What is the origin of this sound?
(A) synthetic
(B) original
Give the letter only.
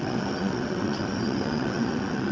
A